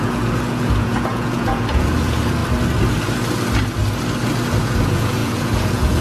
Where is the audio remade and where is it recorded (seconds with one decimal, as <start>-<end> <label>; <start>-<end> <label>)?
0.0-2.4 remade; 2.4-4.6 recorded; 4.6-6.0 remade